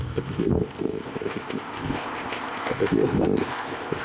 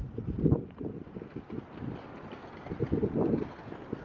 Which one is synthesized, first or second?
first